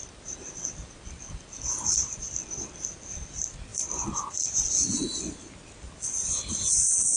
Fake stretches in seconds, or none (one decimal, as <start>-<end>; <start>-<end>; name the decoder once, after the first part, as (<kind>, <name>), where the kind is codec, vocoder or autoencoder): none